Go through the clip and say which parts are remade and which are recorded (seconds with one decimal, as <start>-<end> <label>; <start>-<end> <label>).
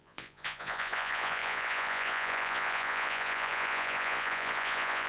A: 0.0-5.1 remade